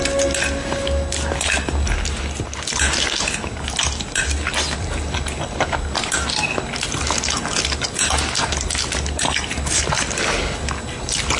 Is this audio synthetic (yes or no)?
no